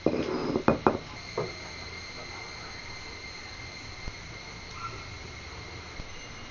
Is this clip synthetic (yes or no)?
no